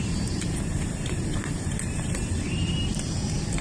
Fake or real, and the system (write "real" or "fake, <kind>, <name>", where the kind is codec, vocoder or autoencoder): fake, vocoder, BigVGAN v2